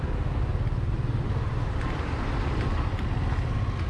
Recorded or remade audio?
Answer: recorded